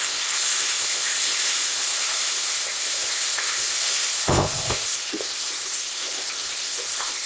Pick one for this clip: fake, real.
fake